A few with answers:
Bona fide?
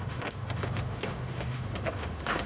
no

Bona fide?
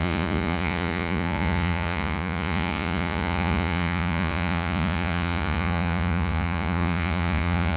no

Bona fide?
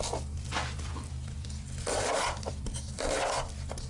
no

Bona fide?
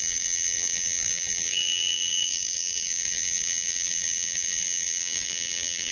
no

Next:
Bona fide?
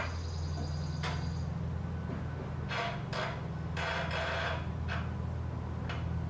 yes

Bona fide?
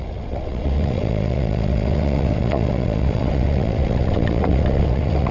no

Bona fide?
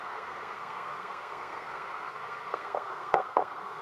no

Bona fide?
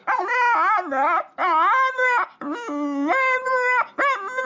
yes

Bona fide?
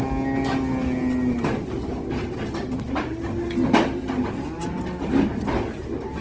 yes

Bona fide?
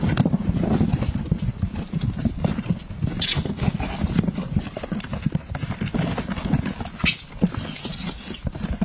yes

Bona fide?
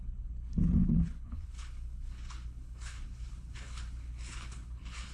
no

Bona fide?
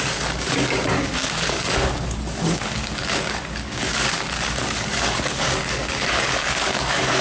no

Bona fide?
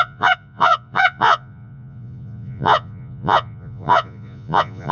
no